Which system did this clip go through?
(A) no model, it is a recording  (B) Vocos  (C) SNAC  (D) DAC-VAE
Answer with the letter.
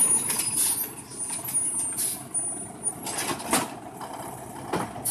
A